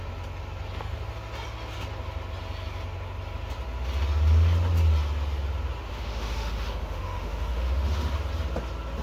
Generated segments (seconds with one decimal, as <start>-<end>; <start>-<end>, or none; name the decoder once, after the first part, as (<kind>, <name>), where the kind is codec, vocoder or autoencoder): 5.9-8.1 (autoencoder, DAC-VAE)

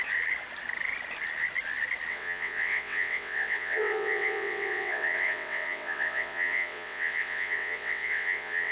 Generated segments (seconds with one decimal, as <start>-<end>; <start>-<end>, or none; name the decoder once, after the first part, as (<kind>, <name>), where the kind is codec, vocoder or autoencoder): 2.1-8.7 (vocoder, WaveNeXt)